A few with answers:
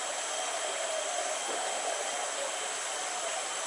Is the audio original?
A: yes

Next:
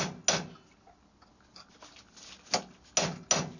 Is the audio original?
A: yes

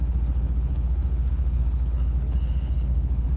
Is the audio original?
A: no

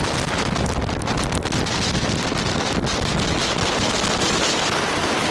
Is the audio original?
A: yes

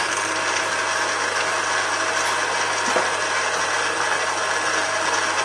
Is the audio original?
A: yes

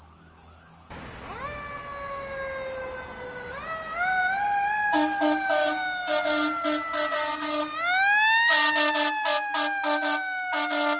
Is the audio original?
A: yes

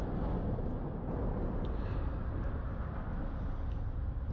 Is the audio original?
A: yes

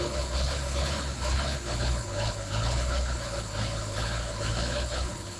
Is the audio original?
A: no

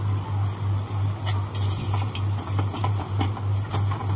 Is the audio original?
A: yes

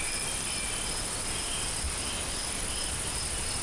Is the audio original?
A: yes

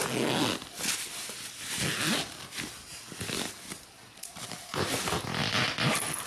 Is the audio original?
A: yes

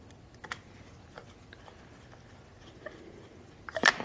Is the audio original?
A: yes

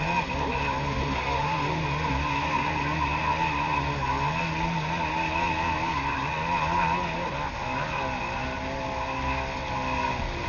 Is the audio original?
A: yes